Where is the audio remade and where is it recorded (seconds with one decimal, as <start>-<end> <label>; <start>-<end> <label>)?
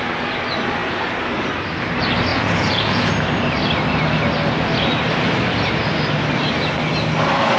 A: 0.0-2.3 recorded; 2.3-3.1 remade; 3.1-7.6 recorded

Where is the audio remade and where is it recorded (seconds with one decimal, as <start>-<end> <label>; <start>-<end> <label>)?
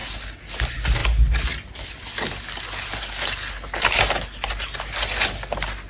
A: 0.0-5.9 recorded